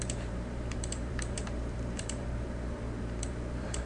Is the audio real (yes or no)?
no